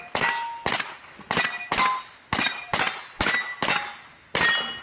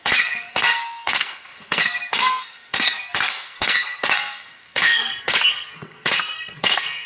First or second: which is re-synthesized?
second